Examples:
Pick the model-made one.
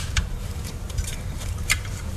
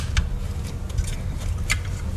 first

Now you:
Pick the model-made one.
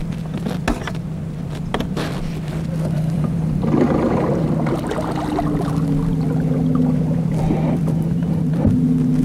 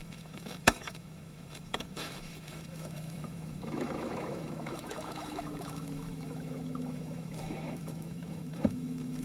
second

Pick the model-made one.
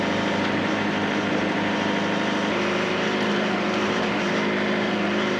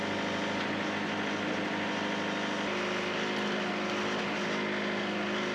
first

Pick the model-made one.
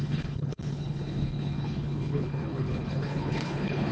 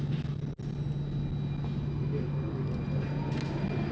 first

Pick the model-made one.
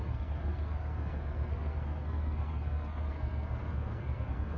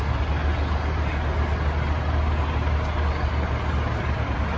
first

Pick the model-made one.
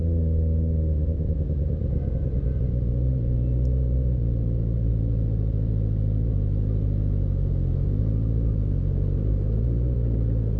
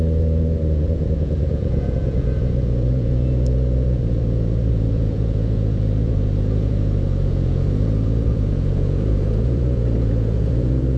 second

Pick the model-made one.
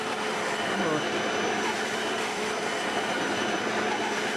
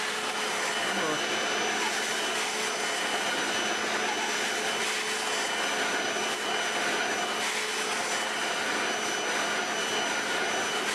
first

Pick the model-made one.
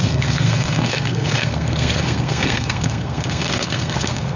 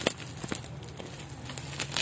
first